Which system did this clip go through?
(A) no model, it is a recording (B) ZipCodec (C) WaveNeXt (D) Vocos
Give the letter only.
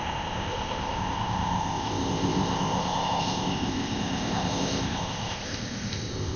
B